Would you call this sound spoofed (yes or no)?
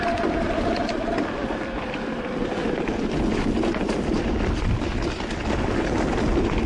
no